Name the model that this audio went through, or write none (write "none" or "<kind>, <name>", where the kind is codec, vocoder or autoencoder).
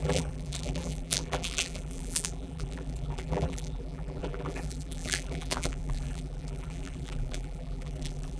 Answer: vocoder, BigVGAN v2